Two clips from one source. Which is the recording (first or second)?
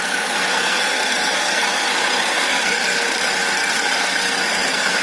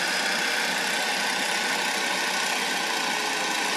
second